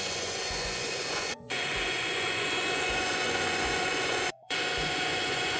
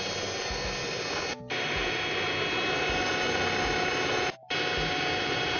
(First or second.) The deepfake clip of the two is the first